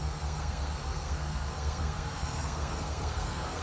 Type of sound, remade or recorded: remade